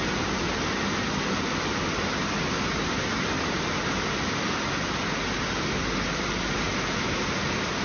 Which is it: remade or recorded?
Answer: recorded